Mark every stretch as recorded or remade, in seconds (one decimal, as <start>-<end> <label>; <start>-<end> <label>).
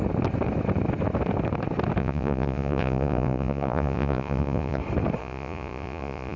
0.0-2.0 recorded; 2.0-4.8 remade; 4.8-5.2 recorded; 5.2-6.4 remade